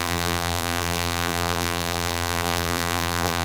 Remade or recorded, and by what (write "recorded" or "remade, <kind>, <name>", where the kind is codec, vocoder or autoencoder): remade, vocoder, BigVGAN v2